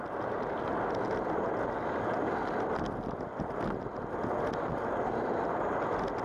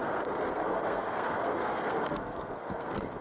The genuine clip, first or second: first